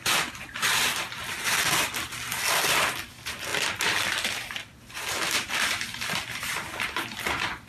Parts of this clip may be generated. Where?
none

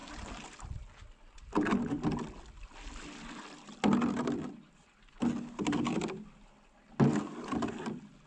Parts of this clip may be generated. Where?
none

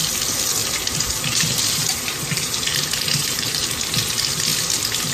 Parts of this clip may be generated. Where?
0.6-3.7 (vocoder, BigVGAN v2)

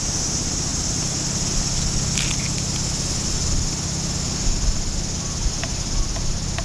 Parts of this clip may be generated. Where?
none

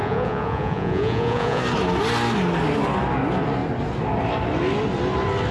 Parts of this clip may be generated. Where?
0.0-1.6 (vocoder, Vocos)

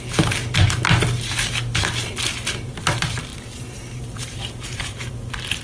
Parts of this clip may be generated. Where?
3.3-5.1 (vocoder, BigVGAN v2)

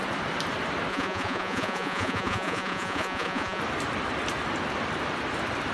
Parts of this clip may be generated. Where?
0.9-3.6 (vocoder, Vocos)